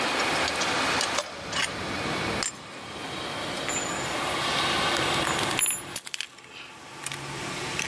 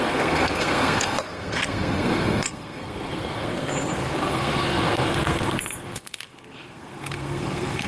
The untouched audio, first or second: first